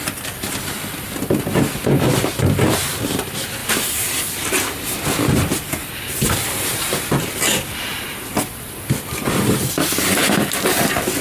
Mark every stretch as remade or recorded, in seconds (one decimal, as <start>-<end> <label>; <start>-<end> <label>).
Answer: 0.0-3.6 recorded; 3.6-4.2 remade; 4.2-5.8 recorded; 5.8-8.0 remade; 8.0-11.2 recorded

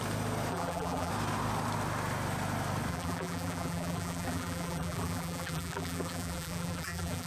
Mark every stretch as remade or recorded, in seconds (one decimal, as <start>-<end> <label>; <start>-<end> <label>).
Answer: 0.0-0.5 recorded; 0.5-1.1 remade; 1.1-2.9 recorded; 2.9-7.3 remade

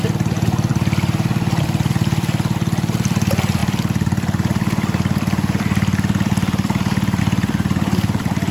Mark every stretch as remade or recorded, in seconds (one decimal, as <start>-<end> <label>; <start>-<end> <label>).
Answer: 0.0-8.5 remade

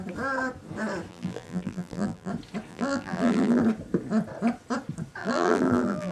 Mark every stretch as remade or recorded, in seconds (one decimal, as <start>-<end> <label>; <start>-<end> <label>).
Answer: 0.0-1.1 recorded; 1.1-2.3 remade; 2.3-2.7 recorded; 2.7-3.6 remade; 3.6-5.2 recorded; 5.2-6.1 remade

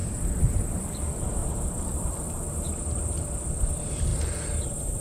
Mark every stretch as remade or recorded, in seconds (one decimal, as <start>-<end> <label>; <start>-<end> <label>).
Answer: 0.0-0.6 recorded; 0.6-4.1 remade; 4.1-5.0 recorded

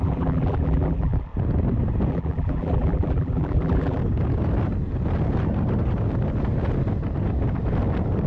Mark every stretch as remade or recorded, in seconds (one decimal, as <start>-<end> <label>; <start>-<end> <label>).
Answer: 0.0-1.3 remade; 1.3-2.1 recorded; 2.1-4.0 remade; 4.0-8.3 recorded

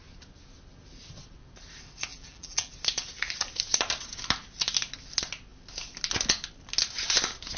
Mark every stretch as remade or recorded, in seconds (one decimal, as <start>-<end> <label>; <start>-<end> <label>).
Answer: 0.0-2.1 recorded; 2.1-2.7 remade; 2.7-7.6 recorded

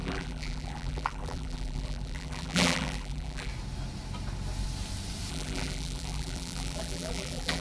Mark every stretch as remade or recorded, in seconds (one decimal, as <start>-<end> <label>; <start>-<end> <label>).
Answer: 0.0-3.5 remade; 3.5-5.3 recorded; 5.3-7.6 remade